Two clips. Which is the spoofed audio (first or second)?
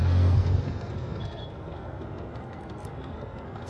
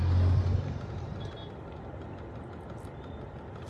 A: first